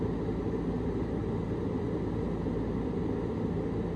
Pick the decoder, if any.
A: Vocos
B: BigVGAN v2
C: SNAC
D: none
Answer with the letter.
D